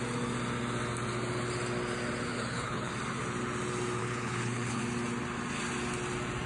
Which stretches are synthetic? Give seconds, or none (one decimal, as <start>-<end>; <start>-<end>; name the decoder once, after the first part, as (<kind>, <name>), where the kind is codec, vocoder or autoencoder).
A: 2.3-2.9 (codec, HILCodec); 4.0-4.8